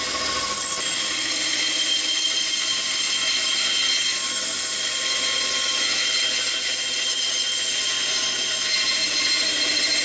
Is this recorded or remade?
recorded